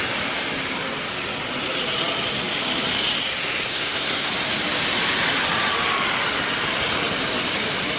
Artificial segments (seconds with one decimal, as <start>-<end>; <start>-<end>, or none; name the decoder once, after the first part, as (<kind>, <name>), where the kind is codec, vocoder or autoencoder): 3.7-4.3 (codec, SNAC)